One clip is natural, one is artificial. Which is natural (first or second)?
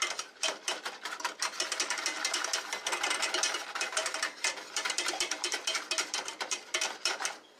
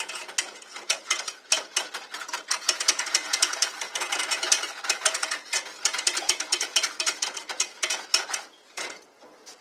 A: first